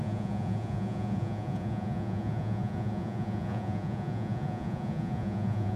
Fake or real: fake